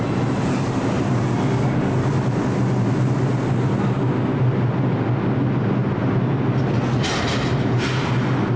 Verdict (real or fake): real